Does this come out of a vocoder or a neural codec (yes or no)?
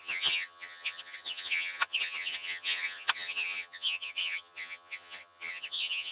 yes